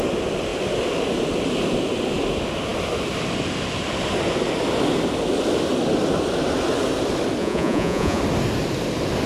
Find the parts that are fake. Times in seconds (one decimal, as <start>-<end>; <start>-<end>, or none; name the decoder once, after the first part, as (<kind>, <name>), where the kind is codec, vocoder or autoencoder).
7.4-8.2 (vocoder, Vocos)